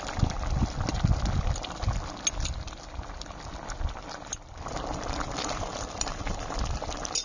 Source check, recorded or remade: recorded